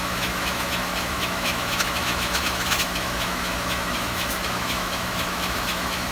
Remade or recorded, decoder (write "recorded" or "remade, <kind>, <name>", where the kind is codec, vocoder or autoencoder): remade, autoencoder, DAC-VAE